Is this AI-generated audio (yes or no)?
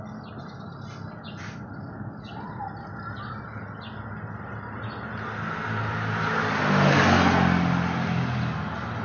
no